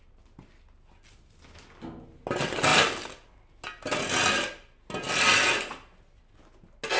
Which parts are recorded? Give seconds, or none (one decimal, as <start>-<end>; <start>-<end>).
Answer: 0.0-7.0